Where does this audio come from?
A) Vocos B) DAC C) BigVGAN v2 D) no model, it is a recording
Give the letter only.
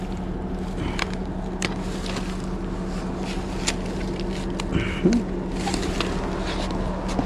D